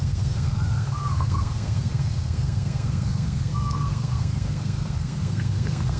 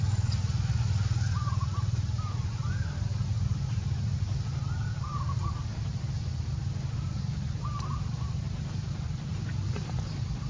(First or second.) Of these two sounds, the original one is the second